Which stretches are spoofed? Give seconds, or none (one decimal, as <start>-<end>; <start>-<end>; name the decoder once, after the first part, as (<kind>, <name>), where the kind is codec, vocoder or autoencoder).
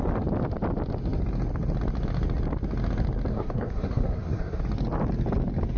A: 3.3-4.6 (codec, SNAC)